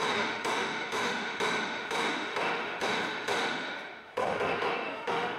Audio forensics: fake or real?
fake